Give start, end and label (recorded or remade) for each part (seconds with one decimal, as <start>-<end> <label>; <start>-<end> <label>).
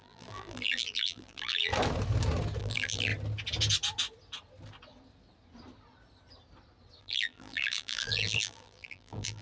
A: 0.0-1.7 remade; 1.7-2.6 recorded; 2.6-3.1 remade; 3.1-7.0 recorded; 7.0-9.4 remade